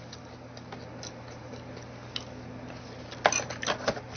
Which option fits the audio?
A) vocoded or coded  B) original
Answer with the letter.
B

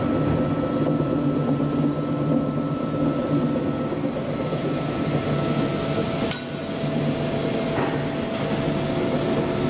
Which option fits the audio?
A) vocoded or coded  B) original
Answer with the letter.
B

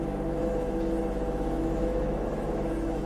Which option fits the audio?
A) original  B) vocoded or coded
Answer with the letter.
B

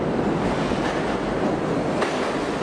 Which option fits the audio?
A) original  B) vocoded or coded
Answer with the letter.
A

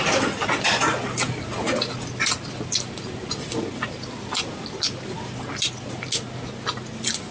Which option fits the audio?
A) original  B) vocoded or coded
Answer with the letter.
A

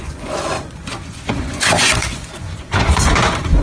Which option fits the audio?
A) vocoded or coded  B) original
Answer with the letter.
A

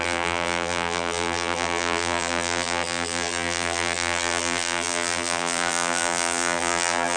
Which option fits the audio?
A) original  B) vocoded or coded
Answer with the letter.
B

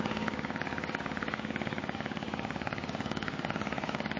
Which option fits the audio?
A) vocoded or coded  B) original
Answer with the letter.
A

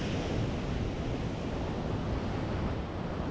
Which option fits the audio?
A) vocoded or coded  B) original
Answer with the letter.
B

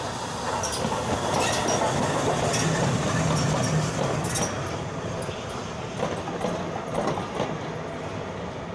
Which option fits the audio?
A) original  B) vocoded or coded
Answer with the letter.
A